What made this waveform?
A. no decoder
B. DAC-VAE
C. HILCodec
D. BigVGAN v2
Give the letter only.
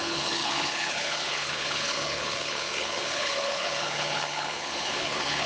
C